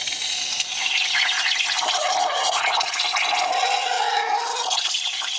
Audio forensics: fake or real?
real